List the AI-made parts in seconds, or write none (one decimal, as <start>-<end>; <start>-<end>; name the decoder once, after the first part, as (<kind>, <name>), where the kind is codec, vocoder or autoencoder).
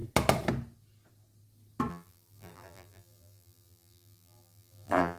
1.9-5.2 (vocoder, BigVGAN v2)